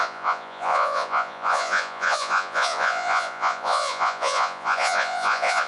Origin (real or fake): fake